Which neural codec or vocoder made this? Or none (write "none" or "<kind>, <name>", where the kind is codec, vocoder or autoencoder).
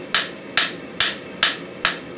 none